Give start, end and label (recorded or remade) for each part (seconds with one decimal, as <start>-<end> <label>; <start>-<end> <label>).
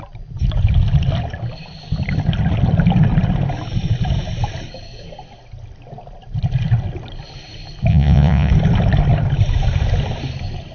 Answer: 0.0-7.9 recorded; 7.9-8.5 remade; 8.5-10.7 recorded